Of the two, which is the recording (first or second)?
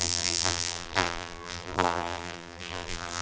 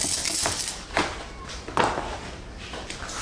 second